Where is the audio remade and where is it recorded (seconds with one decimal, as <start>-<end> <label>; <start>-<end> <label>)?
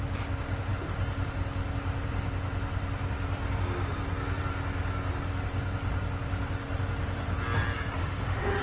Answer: 0.0-8.0 recorded; 8.0-8.6 remade